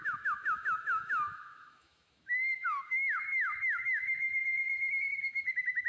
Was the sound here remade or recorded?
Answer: remade